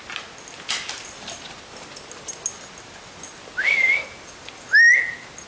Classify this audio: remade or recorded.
recorded